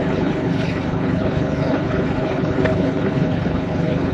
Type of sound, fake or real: fake